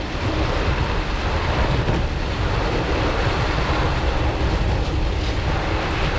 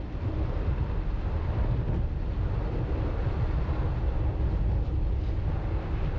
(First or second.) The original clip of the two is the second